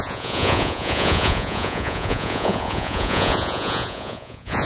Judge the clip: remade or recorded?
remade